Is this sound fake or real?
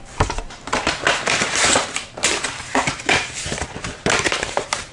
fake